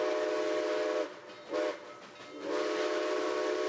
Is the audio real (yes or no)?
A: yes